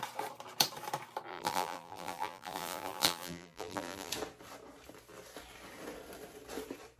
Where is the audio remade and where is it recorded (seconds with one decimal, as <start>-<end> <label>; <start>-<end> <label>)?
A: 0.0-1.3 recorded; 1.3-4.1 remade; 4.1-7.0 recorded